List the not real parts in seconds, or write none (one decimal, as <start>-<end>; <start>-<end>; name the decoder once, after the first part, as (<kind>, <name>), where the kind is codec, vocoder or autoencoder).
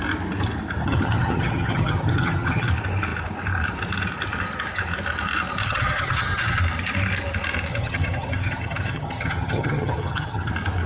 0.8-2.7 (vocoder, HiFi-GAN); 5.6-6.6; 7.7-10.5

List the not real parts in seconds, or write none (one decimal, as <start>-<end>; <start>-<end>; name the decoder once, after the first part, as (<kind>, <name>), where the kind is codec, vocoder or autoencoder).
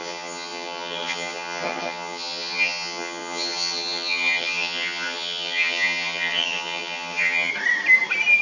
0.0-7.5 (vocoder, HiFi-GAN)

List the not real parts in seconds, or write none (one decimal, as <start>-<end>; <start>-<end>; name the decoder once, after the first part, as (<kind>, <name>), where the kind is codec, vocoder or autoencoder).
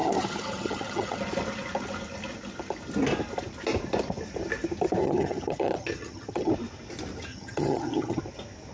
0.0-1.2 (vocoder, HiFi-GAN); 5.0-6.5; 7.3-8.2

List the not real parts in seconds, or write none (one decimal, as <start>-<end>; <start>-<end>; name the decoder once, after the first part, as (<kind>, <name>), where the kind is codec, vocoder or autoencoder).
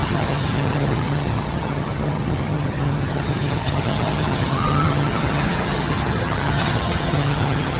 0.0-7.8 (vocoder, HiFi-GAN)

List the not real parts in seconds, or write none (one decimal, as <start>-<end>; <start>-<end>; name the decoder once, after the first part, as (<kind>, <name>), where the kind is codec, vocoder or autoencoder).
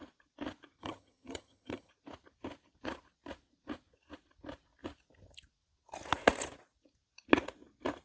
0.8-1.9 (vocoder, HiFi-GAN)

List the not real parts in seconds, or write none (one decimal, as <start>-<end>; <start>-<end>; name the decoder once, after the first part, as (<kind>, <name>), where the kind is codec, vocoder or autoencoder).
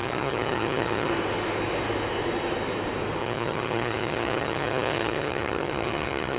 0.0-1.1 (vocoder, HiFi-GAN); 3.2-6.4